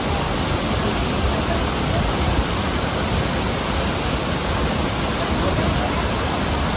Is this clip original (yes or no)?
yes